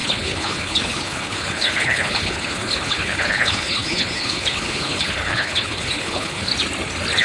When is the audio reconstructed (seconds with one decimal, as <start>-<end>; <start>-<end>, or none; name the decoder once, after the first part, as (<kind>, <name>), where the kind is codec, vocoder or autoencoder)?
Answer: 0.0-6.5 (codec, HILCodec)